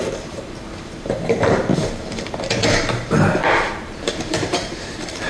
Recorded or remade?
remade